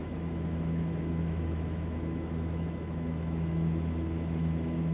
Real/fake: fake